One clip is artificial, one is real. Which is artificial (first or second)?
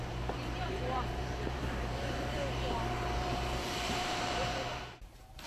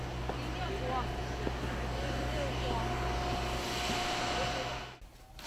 first